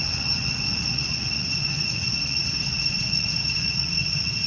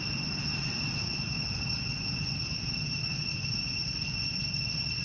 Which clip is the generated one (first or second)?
first